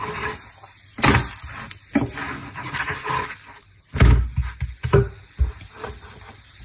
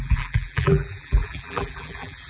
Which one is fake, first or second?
second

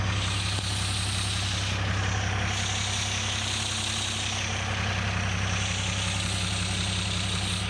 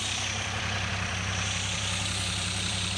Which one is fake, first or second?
second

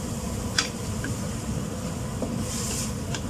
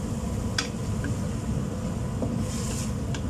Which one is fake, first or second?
first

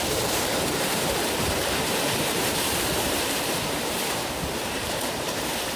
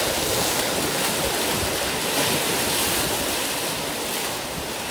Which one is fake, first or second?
first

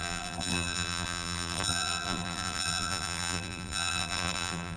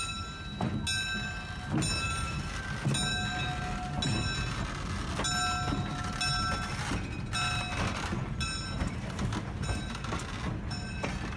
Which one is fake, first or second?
first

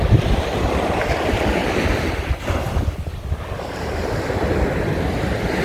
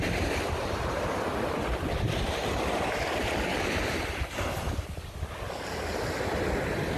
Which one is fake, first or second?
first